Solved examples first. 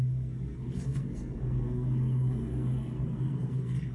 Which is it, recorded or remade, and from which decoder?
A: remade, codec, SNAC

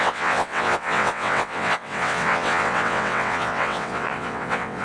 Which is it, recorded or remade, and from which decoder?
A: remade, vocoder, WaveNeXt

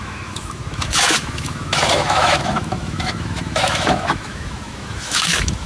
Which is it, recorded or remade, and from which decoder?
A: remade, autoencoder, DAC-VAE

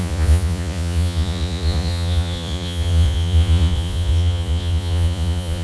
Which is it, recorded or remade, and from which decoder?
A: remade, vocoder, Vocos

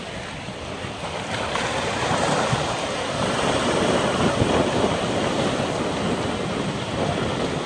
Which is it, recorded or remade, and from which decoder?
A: recorded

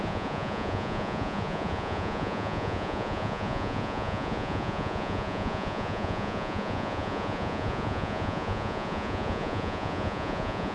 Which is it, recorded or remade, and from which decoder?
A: remade, vocoder, Vocos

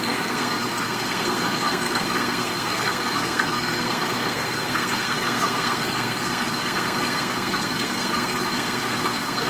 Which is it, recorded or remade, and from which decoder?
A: remade, codec, SNAC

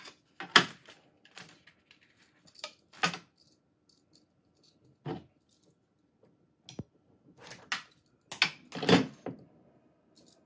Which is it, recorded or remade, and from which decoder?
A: recorded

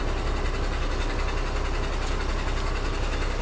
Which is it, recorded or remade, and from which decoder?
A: recorded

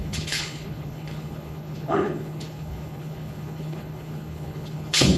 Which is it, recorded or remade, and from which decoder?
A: remade, codec, HILCodec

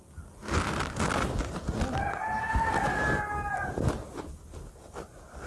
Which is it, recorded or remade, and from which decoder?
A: recorded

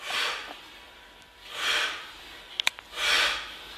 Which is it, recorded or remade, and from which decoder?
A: recorded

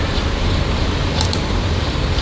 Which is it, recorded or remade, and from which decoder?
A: remade, vocoder, BigVGAN v2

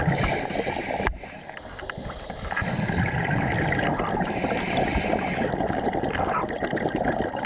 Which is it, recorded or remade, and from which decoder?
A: recorded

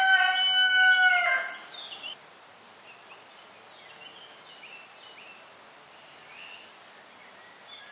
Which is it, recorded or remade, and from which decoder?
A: recorded